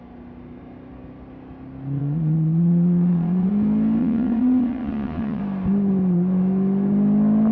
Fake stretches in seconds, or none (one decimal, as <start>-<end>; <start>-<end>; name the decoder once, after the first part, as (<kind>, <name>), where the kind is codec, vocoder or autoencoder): 2.0-3.5 (vocoder, Vocos); 4.0-5.4